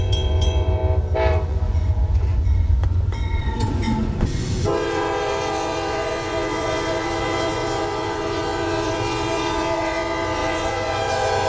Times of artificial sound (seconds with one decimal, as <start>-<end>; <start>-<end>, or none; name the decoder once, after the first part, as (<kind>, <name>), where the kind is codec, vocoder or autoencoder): 0.0-0.8 (vocoder, Vocos); 1.3-11.5